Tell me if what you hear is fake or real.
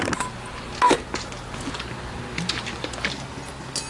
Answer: real